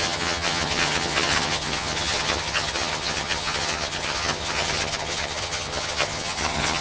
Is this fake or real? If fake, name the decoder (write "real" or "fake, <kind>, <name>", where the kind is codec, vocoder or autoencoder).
fake, vocoder, HiFi-GAN